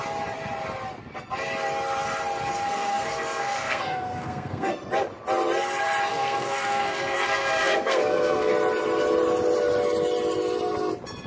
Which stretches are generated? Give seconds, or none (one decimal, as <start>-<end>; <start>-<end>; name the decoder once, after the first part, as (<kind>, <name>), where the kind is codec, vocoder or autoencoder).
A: 2.5-4.9 (codec, SNAC); 6.1-8.5